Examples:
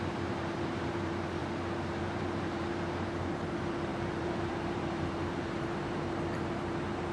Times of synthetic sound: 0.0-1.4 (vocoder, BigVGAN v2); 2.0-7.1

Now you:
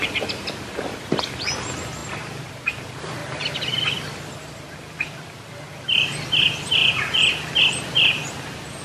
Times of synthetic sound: 0.0-2.0 (vocoder, BigVGAN v2); 2.8-3.2; 4.5-6.8; 7.6-8.8

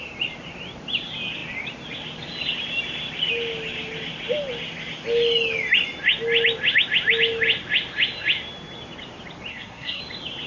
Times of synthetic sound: 9.5-10.0 (codec, SNAC)

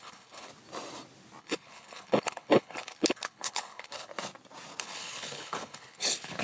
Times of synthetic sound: 0.0-0.5 (codec, HILCodec); 1.4-4.1; 4.8-6.4

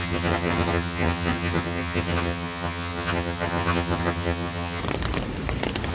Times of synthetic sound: 0.0-4.8 (vocoder, HiFi-GAN)

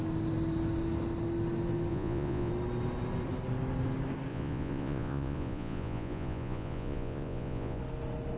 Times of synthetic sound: 1.9-2.5 (vocoder, Vocos); 4.3-7.8

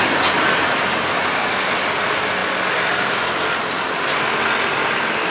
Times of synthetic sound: none

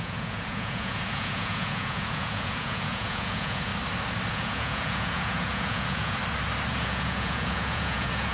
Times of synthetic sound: 0.0-3.7 (vocoder, Vocos); 4.3-6.2; 6.7-8.3